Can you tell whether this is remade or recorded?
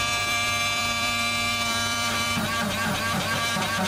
remade